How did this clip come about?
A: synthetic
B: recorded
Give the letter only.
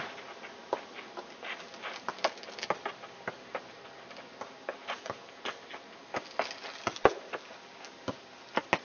B